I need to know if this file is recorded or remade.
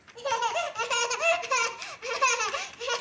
recorded